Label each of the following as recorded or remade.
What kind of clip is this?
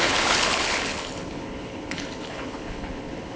remade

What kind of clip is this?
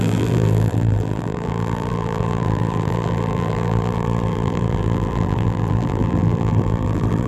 remade